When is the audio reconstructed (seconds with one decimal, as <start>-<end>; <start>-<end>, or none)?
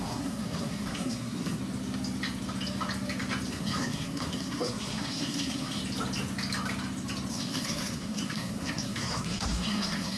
0.0-1.6; 3.5-5.8; 7.3-10.2